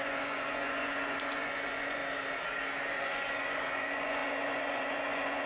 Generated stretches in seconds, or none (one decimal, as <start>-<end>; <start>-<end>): 0.0-2.0; 2.8-5.5